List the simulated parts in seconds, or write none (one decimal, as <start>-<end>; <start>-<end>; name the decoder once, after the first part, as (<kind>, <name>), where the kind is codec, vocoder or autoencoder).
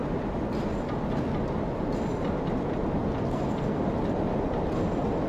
3.2-3.8 (codec, SNAC)